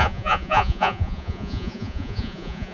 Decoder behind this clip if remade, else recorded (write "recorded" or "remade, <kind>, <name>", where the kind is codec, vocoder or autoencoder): remade, vocoder, Vocos